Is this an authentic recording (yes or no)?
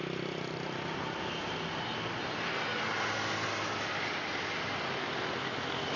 yes